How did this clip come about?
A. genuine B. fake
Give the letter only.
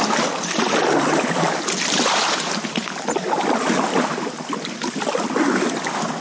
A